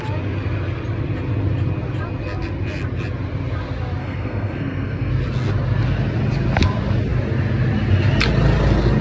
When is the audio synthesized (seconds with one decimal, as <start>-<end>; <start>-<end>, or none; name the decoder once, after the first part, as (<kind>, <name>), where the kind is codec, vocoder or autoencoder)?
4.0-5.1 (codec, SNAC)